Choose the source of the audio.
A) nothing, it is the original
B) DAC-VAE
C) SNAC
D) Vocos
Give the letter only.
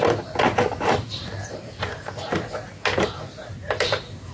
A